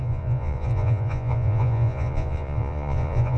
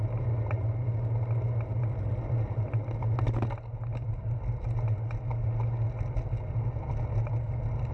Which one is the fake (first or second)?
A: first